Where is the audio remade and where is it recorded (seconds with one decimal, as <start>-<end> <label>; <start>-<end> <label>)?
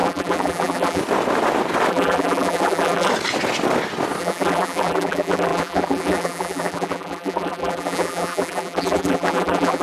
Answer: 0.0-1.0 remade; 1.0-1.9 recorded; 1.9-3.1 remade; 3.1-4.2 recorded; 4.2-9.8 remade